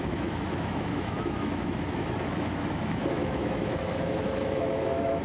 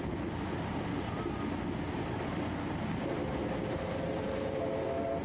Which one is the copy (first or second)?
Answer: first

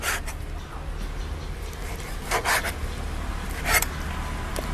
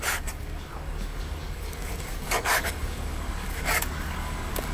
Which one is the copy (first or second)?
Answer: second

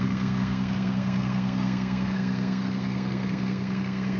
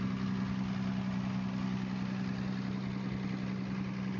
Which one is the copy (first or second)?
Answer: first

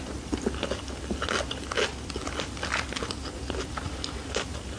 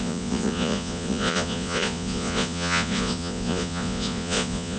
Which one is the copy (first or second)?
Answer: second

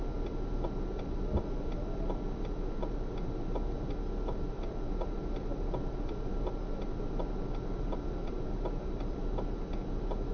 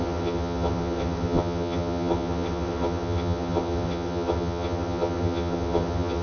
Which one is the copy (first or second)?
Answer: second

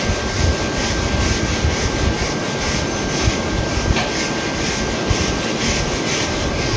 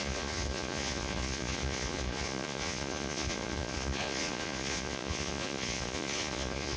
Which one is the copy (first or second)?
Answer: second